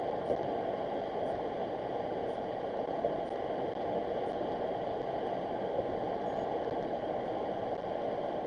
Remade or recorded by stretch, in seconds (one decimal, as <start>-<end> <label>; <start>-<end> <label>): 0.0-2.2 recorded; 2.2-3.0 remade; 3.0-8.5 recorded